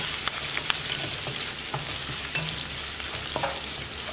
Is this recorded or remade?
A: recorded